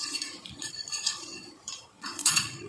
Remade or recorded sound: remade